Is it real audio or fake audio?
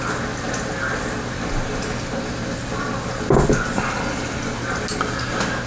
real